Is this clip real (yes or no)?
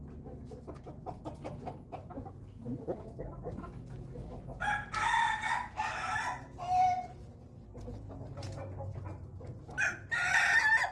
yes